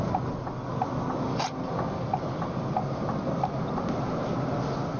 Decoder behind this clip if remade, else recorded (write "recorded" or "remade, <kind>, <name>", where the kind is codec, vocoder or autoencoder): recorded